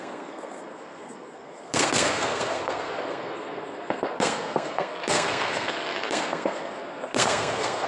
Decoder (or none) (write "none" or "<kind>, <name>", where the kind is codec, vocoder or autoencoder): codec, SNAC